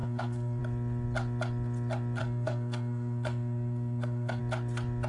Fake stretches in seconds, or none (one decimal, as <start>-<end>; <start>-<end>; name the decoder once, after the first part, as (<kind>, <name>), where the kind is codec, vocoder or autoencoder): 0.0-0.6 (codec, SNAC); 2.2-4.4